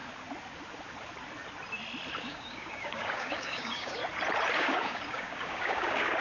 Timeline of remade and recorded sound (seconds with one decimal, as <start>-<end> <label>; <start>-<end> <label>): 0.0-2.2 recorded; 2.2-4.0 remade; 4.0-4.6 recorded; 4.6-6.2 remade